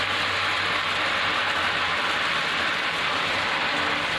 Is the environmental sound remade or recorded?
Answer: recorded